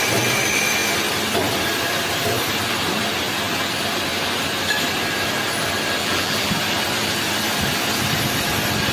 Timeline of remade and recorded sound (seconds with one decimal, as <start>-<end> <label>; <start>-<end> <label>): 0.0-6.0 recorded; 6.0-6.5 remade; 6.5-8.9 recorded